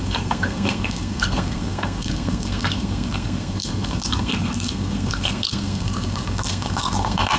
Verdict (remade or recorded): remade